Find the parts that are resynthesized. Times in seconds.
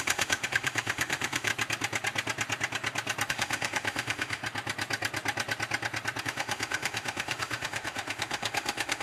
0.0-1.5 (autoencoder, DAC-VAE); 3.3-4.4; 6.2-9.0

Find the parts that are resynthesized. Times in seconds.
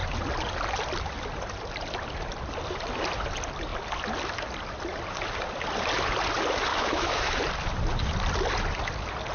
6.7-7.4 (autoencoder, DAC-VAE)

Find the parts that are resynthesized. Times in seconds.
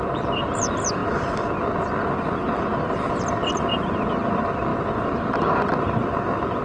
none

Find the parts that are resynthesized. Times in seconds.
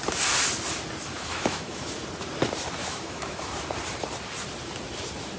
1.1-1.8 (autoencoder, DAC-VAE); 2.8-3.5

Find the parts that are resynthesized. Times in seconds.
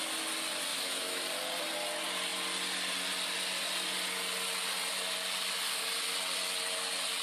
0.7-1.2 (autoencoder, DAC-VAE)